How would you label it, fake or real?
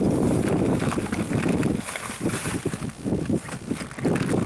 real